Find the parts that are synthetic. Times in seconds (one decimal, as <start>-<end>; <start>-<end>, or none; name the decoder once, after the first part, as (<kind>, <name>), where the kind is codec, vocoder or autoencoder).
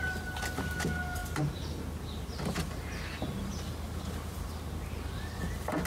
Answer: none